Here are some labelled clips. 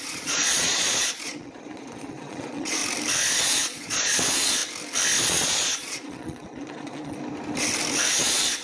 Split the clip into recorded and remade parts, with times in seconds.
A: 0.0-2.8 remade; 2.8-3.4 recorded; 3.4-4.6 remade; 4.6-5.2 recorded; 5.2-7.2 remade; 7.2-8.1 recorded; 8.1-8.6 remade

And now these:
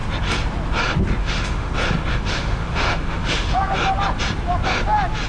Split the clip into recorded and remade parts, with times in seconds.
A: 0.0-1.2 recorded; 1.2-1.7 remade; 1.7-2.1 recorded; 2.1-3.6 remade; 3.6-5.3 recorded

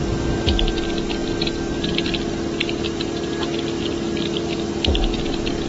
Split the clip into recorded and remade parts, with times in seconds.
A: 0.0-5.7 recorded

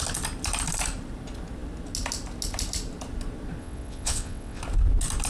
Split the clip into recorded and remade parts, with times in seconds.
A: 0.0-3.6 recorded; 3.6-4.6 remade; 4.6-5.3 recorded

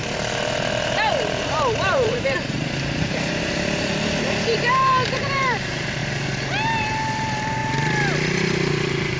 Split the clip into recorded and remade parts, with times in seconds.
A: 0.0-6.0 remade; 6.0-6.8 recorded; 6.8-7.6 remade; 7.6-8.3 recorded; 8.3-9.2 remade

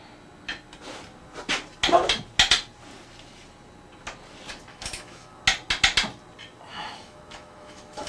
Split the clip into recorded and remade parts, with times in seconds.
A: 0.0-4.7 recorded; 4.7-5.4 remade; 5.4-6.7 recorded; 6.7-8.1 remade

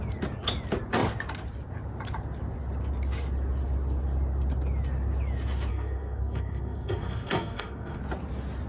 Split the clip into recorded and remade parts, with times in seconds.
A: 0.0-5.7 recorded; 5.7-8.0 remade; 8.0-8.7 recorded

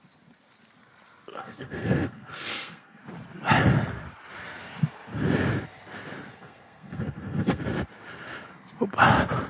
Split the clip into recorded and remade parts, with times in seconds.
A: 0.0-1.3 recorded; 1.3-3.0 remade; 3.0-6.3 recorded; 6.3-7.6 remade; 7.6-9.5 recorded